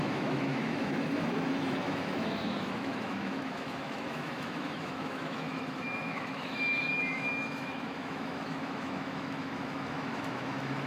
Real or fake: fake